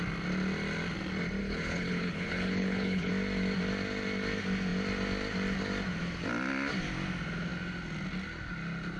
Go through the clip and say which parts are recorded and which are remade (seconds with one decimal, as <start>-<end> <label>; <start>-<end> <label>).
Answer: 0.0-1.4 recorded; 1.4-3.1 remade; 3.1-9.0 recorded